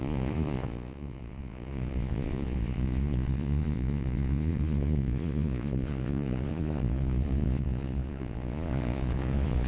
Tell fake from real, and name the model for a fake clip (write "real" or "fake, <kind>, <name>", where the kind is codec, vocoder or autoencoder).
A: fake, vocoder, Vocos